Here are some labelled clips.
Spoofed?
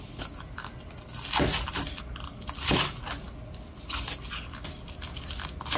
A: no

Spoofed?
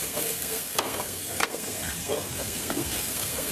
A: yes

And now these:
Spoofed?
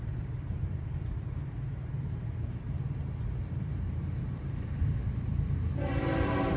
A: yes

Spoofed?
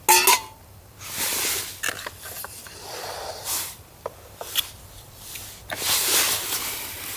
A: no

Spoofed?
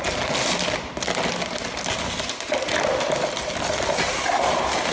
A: no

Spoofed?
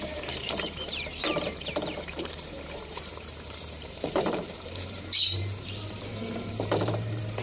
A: yes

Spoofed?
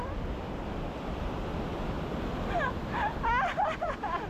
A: no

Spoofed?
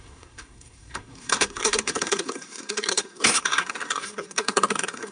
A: yes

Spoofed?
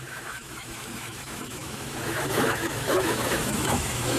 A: yes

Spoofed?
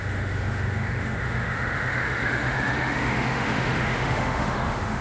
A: yes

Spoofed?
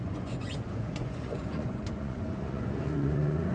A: yes